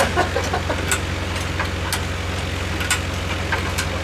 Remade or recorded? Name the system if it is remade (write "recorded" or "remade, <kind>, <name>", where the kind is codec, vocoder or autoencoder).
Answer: recorded